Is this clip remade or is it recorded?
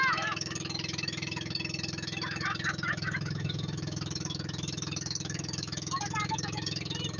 remade